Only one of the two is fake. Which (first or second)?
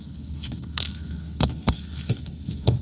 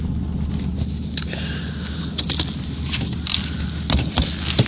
first